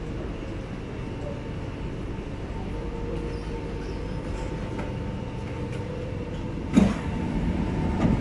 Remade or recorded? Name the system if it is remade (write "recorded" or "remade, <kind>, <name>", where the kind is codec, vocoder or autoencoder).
recorded